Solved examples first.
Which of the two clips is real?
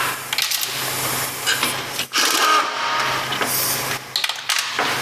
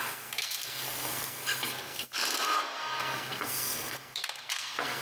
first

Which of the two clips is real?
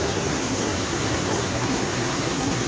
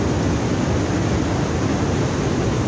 second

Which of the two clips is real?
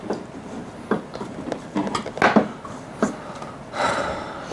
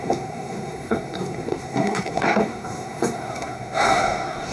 first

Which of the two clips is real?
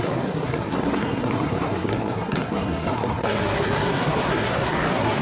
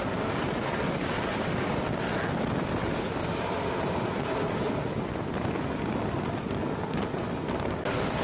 second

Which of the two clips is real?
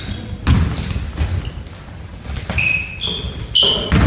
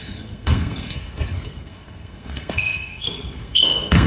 first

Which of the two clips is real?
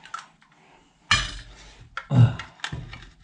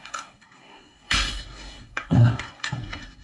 first